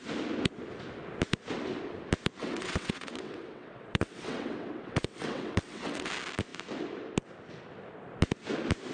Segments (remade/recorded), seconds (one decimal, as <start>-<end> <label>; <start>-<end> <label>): 0.0-2.4 recorded; 2.4-6.1 remade; 6.1-8.9 recorded